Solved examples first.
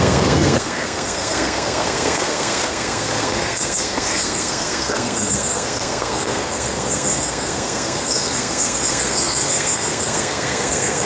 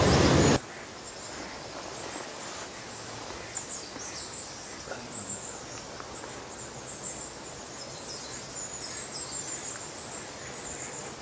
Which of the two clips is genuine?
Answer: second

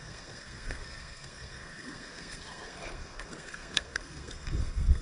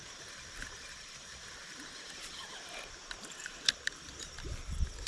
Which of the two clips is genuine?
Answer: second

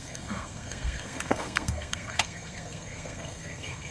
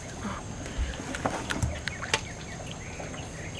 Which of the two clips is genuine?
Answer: second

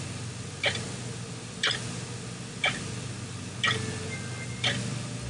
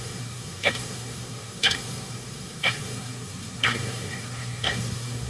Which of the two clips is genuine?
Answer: first